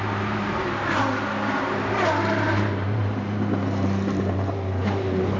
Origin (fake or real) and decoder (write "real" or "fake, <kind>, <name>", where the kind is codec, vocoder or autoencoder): fake, vocoder, BigVGAN v2